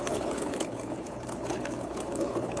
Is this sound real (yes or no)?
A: no